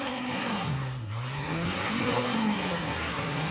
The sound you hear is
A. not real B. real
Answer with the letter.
A